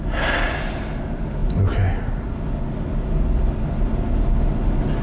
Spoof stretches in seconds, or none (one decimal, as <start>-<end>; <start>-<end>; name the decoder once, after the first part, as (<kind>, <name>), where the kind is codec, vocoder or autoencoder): none